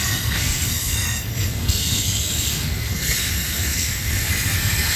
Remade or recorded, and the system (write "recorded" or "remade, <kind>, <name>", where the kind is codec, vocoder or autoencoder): remade, codec, SNAC